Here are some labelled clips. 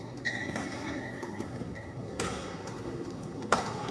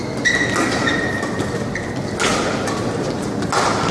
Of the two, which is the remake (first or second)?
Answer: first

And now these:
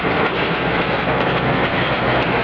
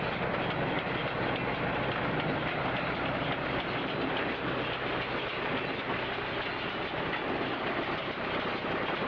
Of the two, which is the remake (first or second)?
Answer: first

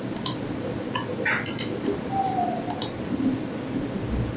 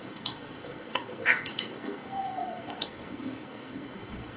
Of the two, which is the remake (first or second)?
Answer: second